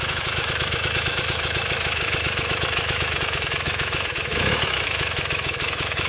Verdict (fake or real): fake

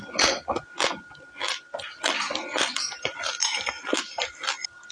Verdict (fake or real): real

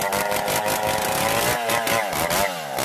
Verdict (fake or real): real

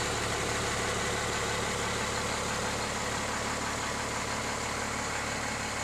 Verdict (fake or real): real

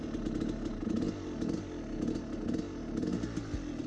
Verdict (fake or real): real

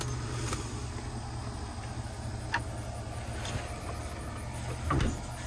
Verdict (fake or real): real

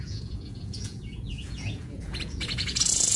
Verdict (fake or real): fake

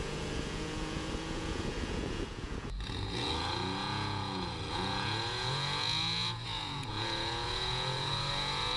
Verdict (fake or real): fake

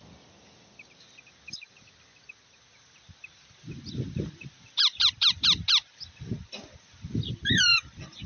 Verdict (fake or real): real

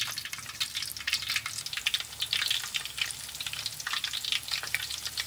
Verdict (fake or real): real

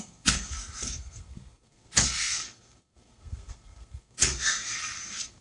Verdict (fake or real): fake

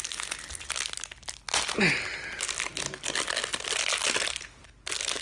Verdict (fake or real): real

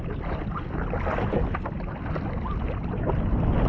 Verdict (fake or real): real